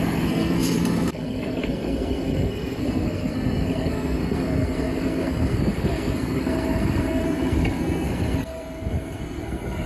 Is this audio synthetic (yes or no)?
yes